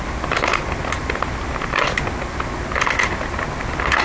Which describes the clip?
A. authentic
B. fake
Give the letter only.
A